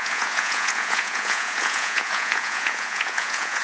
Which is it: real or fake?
fake